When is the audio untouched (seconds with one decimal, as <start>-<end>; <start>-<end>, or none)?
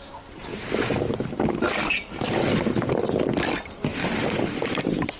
0.0-0.5; 1.1-1.8; 3.0-4.0; 4.6-5.2